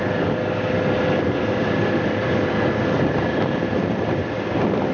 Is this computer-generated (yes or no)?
no